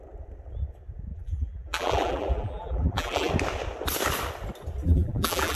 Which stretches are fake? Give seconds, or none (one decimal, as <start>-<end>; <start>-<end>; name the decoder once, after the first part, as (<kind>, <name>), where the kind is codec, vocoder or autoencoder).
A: 1.1-3.3 (vocoder, BigVGAN v2); 4.8-5.6

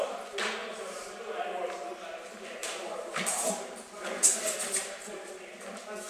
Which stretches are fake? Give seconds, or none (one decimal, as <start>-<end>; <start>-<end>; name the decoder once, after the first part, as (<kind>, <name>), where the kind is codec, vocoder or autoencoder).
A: 0.6-1.2 (vocoder, BigVGAN v2); 2.6-5.3

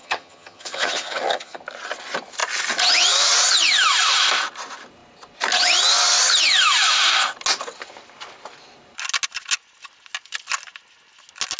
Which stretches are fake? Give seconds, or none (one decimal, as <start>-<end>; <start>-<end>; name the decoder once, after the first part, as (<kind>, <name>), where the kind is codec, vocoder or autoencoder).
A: 0.0-1.6 (vocoder, HiFi-GAN)

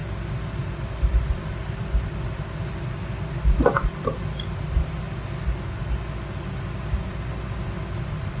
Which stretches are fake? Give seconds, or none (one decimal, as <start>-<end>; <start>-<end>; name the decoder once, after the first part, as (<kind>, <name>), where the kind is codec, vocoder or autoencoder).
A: none

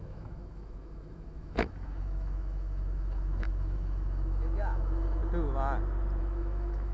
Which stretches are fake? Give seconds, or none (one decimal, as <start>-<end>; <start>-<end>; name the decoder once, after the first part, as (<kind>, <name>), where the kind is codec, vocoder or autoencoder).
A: 0.0-5.2 (autoencoder, DAC-VAE); 6.2-6.9